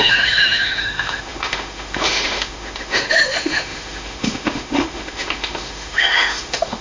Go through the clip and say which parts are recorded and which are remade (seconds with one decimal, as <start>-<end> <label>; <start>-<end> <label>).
0.0-6.8 remade

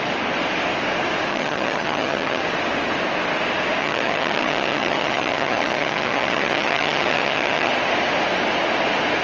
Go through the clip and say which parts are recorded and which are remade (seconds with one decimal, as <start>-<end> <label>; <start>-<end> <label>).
0.0-1.3 recorded; 1.3-2.4 remade; 2.4-3.8 recorded; 3.8-7.7 remade; 7.7-9.2 recorded